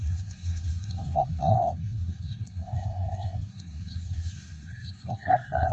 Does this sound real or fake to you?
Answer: fake